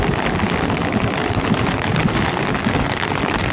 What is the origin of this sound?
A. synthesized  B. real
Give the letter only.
B